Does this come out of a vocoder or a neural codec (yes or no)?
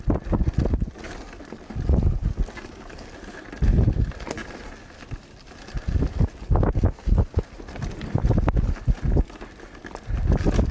no